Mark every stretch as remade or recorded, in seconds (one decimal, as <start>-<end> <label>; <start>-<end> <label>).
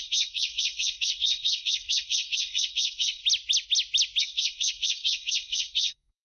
0.0-3.2 remade; 3.2-4.2 recorded; 4.2-6.2 remade